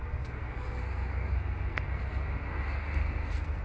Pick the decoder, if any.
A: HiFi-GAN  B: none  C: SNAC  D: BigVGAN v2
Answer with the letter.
C